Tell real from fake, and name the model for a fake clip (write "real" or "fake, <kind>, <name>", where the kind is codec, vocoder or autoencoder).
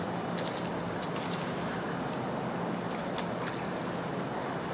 real